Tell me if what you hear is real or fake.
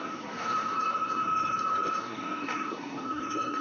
fake